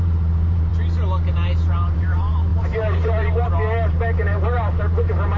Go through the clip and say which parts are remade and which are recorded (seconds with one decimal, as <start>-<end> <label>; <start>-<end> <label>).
0.0-0.7 remade; 0.7-1.3 recorded; 1.3-5.4 remade